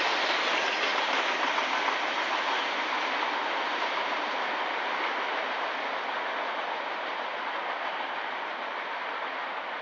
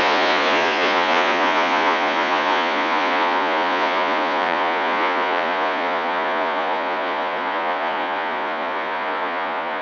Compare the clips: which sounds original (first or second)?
first